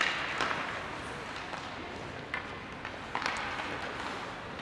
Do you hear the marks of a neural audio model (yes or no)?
no